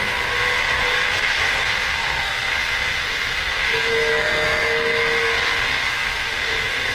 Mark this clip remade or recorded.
remade